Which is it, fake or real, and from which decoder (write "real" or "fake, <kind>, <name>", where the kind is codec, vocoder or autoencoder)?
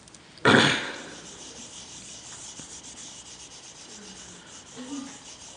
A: real